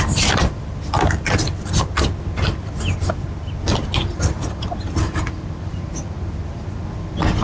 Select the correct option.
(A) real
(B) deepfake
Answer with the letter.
A